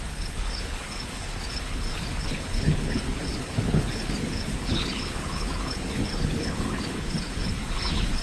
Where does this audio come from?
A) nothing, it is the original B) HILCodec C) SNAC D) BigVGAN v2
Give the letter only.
B